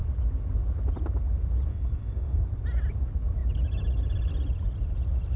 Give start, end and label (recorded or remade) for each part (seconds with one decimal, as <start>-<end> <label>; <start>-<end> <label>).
0.0-1.7 recorded; 1.7-2.4 remade; 2.4-5.4 recorded